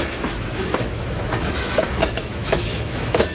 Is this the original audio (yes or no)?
no